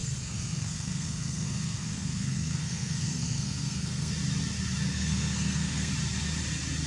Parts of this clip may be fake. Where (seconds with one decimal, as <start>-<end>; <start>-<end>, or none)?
0.0-4.1; 4.9-5.9